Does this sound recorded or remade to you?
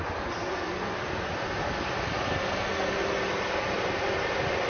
recorded